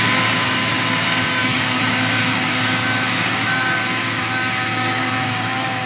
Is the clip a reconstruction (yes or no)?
yes